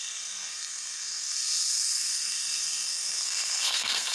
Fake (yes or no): yes